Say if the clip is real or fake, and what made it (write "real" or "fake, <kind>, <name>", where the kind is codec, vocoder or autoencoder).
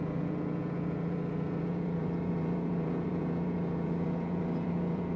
fake, vocoder, Vocos